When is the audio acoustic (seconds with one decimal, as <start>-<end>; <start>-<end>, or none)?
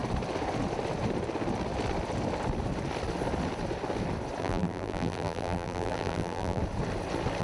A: 0.0-4.4; 6.6-7.4